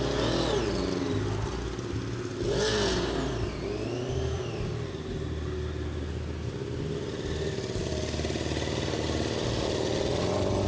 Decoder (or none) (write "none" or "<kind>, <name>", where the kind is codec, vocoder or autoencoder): none